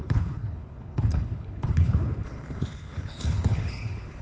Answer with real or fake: fake